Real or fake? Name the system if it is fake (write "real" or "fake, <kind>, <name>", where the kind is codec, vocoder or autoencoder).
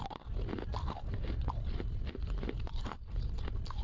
real